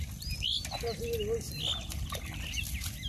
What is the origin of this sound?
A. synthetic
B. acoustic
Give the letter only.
B